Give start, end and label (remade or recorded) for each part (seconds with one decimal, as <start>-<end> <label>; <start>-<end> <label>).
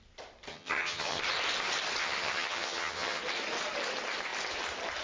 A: 0.0-0.5 recorded; 0.5-1.2 remade; 1.2-2.0 recorded; 2.0-3.2 remade; 3.2-5.0 recorded